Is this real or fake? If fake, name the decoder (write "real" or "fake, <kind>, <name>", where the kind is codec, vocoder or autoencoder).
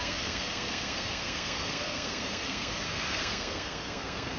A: fake, codec, SNAC